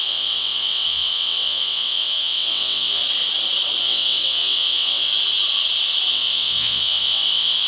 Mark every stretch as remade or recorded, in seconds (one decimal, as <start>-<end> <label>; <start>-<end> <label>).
0.0-3.0 remade; 3.0-3.8 recorded; 3.8-5.1 remade; 5.1-6.1 recorded; 6.1-7.7 remade